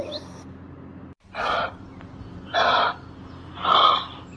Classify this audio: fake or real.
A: real